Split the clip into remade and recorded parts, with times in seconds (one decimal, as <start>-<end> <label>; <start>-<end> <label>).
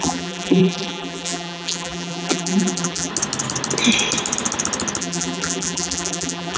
0.0-3.1 remade; 3.1-5.0 recorded; 5.0-6.6 remade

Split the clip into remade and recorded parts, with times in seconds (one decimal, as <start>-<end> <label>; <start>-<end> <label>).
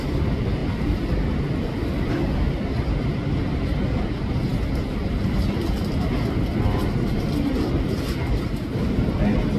0.0-9.6 recorded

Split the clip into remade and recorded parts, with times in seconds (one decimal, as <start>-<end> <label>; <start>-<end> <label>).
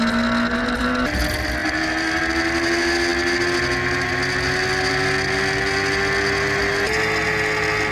0.0-1.6 recorded; 1.6-2.2 remade; 2.2-7.9 recorded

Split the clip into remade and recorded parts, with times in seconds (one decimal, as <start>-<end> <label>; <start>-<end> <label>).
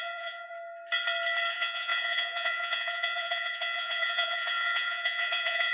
0.0-0.5 remade; 0.5-1.5 recorded; 1.5-5.7 remade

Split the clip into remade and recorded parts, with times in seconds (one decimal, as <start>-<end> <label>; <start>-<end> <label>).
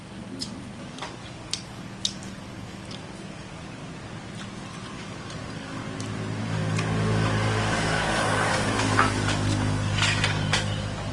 0.0-3.8 remade; 3.8-4.9 recorded; 4.9-5.8 remade; 5.8-6.4 recorded; 6.4-11.1 remade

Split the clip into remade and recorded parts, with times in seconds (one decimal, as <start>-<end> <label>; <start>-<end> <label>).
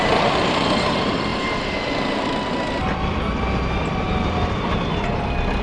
0.0-5.6 recorded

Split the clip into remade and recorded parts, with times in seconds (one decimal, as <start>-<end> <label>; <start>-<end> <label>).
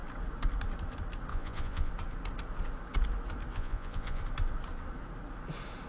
0.0-1.3 recorded; 1.3-1.9 remade; 1.9-3.5 recorded; 3.5-4.2 remade; 4.2-5.9 recorded